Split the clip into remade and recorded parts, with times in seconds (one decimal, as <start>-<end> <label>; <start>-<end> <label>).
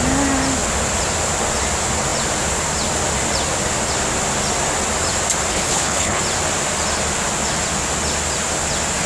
0.0-5.5 recorded; 5.5-6.2 remade; 6.2-9.1 recorded